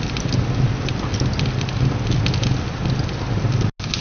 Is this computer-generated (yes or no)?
no